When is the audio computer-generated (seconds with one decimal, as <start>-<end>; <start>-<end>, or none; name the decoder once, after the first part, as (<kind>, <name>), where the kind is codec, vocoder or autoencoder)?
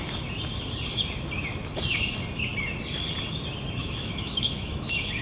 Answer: 3.8-5.2 (autoencoder, DAC-VAE)